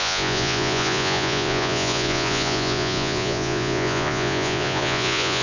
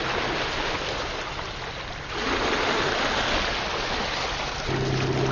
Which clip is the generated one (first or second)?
first